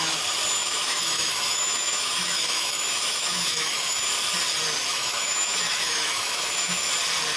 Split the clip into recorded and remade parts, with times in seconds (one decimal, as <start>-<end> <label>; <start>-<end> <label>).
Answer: 0.0-0.6 recorded; 0.6-4.1 remade; 4.1-4.9 recorded; 4.9-6.9 remade; 6.9-7.4 recorded

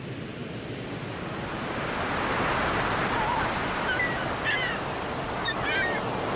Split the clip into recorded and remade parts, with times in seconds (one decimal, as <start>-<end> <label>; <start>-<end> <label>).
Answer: 0.0-6.4 recorded

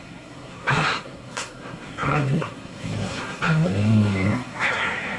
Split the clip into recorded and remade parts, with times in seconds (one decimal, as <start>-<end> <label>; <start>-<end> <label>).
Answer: 0.0-5.2 remade

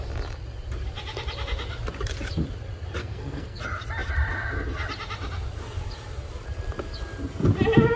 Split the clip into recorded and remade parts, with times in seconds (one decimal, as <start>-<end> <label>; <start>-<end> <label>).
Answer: 0.0-3.0 recorded; 3.0-3.6 remade; 3.6-8.0 recorded